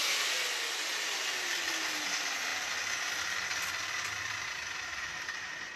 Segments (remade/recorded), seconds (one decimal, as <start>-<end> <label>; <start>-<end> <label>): 0.0-5.8 recorded

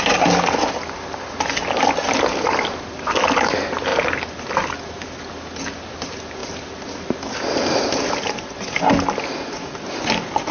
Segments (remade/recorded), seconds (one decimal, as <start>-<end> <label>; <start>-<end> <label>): 0.0-10.5 recorded

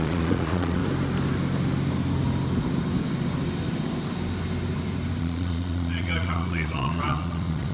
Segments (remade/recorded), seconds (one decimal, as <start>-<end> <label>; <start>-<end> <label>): 0.0-0.8 remade; 0.8-5.2 recorded; 5.2-7.7 remade

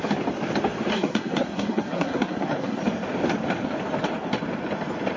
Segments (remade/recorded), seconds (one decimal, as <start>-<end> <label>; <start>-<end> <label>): 0.0-0.9 recorded; 0.9-2.8 remade; 2.8-5.2 recorded

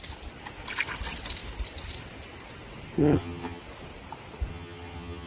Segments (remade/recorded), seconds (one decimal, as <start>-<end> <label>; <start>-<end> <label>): 0.0-3.0 recorded; 3.0-3.6 remade; 3.6-4.5 recorded; 4.5-5.3 remade

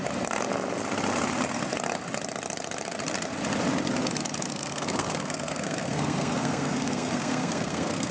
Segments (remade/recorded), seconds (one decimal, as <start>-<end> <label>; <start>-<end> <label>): 0.0-4.5 recorded; 4.5-8.1 remade

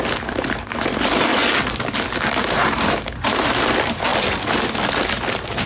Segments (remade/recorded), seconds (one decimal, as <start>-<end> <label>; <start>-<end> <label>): 0.0-1.3 remade; 1.3-2.5 recorded; 2.5-4.1 remade; 4.1-4.9 recorded; 4.9-5.7 remade